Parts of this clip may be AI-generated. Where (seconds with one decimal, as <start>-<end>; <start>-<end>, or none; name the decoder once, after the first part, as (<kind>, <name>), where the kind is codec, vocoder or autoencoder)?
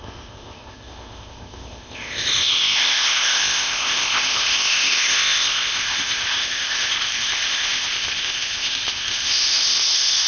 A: 0.0-10.3 (codec, ZipCodec)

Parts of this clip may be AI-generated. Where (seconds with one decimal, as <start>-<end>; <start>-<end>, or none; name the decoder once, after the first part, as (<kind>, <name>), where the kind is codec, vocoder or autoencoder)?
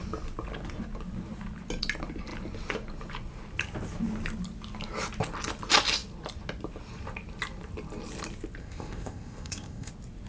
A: 8.6-9.9 (codec, ZipCodec)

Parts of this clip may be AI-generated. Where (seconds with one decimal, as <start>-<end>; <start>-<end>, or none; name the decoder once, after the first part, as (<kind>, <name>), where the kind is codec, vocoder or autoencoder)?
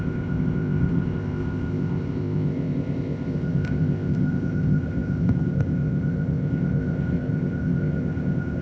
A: 0.0-8.6 (codec, ZipCodec)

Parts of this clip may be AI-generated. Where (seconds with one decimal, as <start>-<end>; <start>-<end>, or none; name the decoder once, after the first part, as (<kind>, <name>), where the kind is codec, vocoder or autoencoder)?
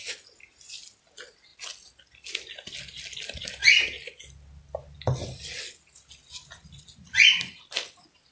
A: none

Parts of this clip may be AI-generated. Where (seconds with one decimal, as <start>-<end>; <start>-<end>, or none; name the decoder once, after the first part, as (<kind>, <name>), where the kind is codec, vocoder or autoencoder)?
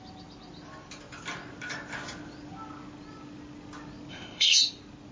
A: 4.1-4.6 (codec, ZipCodec)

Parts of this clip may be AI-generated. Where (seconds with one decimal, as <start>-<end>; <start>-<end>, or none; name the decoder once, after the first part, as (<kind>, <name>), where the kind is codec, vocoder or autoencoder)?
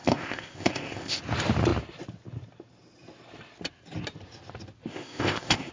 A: 0.0-1.2 (codec, ZipCodec); 4.9-5.7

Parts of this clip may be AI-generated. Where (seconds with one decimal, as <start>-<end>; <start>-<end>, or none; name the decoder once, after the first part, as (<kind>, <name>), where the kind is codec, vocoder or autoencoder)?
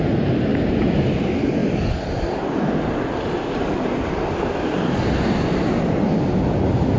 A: none